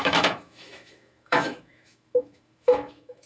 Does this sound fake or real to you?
fake